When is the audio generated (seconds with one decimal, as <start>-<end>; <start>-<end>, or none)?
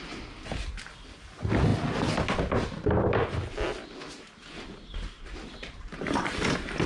none